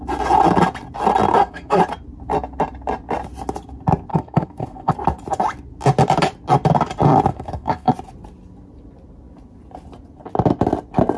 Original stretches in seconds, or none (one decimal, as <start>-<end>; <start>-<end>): 0.0-1.3; 1.8-4.1; 4.9-7.3; 7.9-11.2